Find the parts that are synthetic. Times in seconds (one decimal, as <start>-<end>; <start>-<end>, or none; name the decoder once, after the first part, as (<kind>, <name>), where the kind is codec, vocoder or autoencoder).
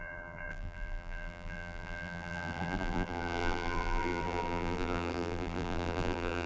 0.0-6.5 (vocoder, BigVGAN v2)